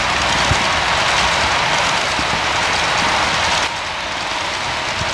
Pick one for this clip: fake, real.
real